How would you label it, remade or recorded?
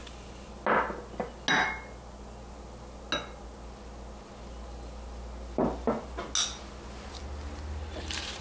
recorded